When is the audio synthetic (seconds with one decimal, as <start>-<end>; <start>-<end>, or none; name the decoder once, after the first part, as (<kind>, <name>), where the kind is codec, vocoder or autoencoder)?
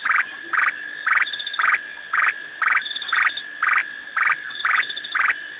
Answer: none